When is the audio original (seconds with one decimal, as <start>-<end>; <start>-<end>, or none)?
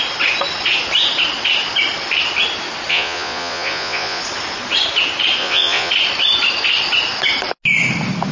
0.0-2.9; 4.2-5.4; 5.9-8.3